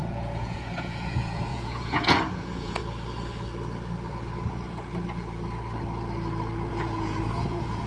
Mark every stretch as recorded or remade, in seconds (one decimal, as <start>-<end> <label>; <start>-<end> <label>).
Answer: 0.0-2.8 remade; 2.8-6.7 recorded; 6.7-7.9 remade